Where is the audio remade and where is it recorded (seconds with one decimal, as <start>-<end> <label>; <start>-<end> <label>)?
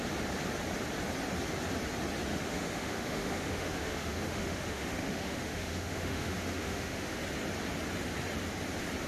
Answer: 0.0-2.3 recorded; 2.3-7.2 remade; 7.2-9.1 recorded